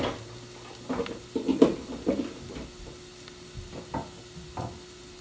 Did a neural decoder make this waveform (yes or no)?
no